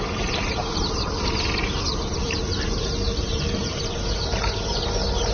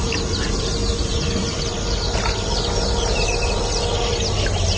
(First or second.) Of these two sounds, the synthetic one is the first